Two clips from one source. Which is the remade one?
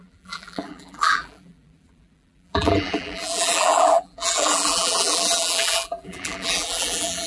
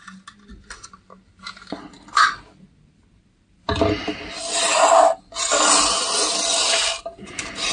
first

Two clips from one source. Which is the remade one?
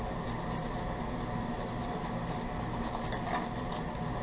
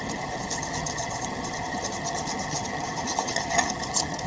second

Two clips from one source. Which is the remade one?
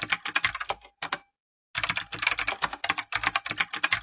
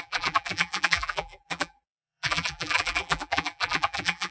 second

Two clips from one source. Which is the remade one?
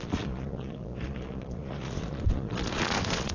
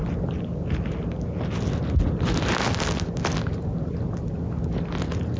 first